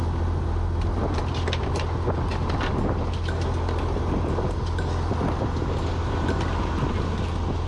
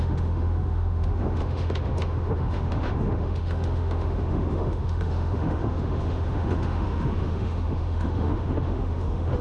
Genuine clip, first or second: first